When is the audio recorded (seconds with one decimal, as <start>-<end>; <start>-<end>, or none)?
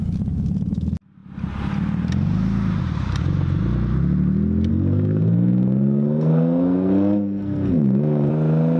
0.0-4.7; 8.3-8.8